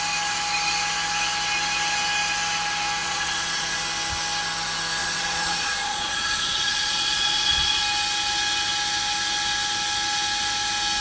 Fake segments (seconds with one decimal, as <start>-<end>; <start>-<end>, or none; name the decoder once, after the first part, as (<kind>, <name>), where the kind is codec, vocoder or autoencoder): 3.0-3.8 (vocoder, Vocos); 5.0-7.8